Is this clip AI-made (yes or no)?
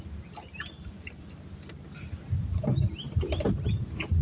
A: no